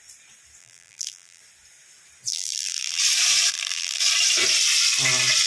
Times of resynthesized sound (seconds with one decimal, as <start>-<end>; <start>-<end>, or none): 0.6-1.4; 2.3-3.0; 3.5-4.0